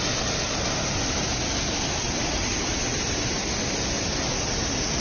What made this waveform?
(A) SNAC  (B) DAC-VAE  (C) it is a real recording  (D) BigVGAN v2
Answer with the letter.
C